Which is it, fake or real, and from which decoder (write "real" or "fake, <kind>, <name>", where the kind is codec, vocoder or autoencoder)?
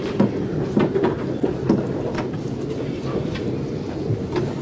real